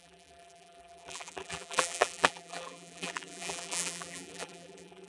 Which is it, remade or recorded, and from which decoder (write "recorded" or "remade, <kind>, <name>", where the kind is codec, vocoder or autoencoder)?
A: remade, vocoder, BigVGAN v2